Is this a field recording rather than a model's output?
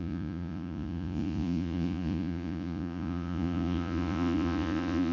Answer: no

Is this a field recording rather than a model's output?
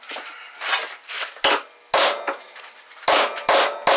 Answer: yes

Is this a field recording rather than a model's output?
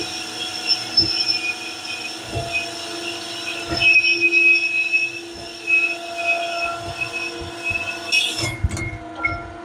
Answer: yes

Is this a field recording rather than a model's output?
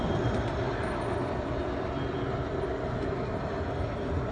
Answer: yes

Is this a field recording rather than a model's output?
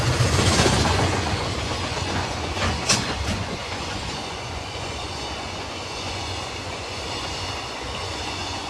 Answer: no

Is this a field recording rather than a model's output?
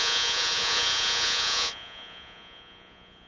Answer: no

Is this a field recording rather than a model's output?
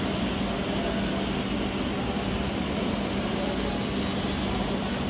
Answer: yes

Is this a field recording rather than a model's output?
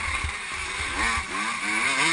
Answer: yes